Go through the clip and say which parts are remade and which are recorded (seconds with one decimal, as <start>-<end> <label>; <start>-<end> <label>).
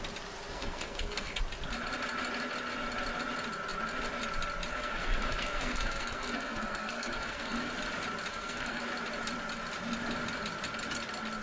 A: 0.0-0.5 recorded; 0.5-1.4 remade; 1.4-4.7 recorded; 4.7-7.7 remade; 7.7-8.3 recorded; 8.3-8.8 remade; 8.8-11.4 recorded